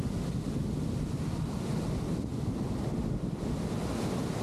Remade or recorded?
recorded